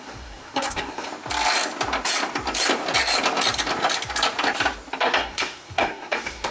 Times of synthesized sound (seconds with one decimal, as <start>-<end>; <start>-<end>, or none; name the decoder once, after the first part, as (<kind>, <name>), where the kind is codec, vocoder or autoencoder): 0.0-1.1 (codec, SNAC); 5.0-6.5